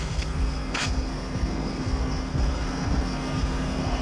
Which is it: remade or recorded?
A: remade